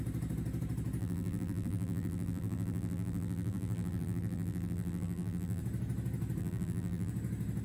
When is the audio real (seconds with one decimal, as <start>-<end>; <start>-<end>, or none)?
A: 0.0-1.0; 5.6-6.4; 7.1-7.6